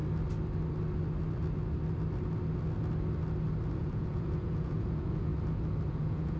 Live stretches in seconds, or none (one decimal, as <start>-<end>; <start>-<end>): 0.0-3.8; 5.3-5.9